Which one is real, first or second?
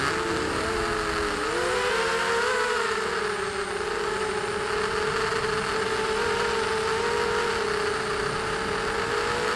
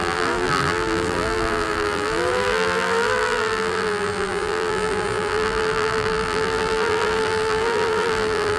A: first